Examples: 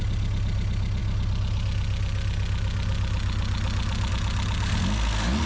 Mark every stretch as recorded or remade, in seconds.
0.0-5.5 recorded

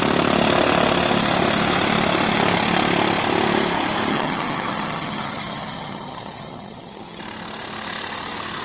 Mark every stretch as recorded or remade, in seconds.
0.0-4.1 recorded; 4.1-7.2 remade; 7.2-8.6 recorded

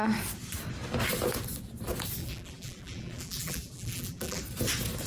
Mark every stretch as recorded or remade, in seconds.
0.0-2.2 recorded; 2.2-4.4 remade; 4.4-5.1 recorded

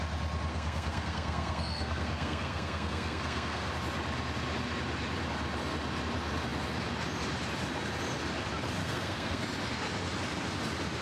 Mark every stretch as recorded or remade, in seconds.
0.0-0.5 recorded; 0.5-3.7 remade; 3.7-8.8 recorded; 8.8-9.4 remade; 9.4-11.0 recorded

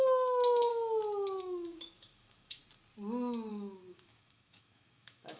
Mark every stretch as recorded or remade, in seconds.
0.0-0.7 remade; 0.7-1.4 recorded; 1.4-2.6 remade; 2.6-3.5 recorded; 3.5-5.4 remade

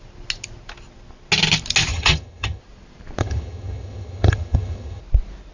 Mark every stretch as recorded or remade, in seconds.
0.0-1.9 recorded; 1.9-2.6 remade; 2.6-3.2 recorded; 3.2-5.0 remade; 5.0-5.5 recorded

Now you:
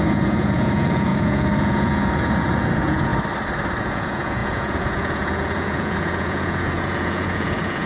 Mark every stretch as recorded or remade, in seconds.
0.0-3.1 remade; 3.1-3.8 recorded; 3.8-7.9 remade